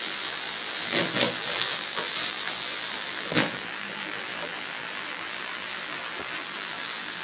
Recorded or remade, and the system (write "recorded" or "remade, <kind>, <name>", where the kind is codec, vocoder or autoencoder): remade, vocoder, BigVGAN v2